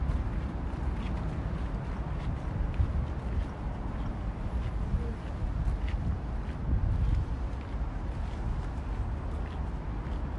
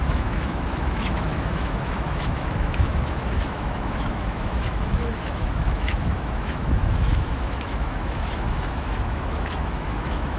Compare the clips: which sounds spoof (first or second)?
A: second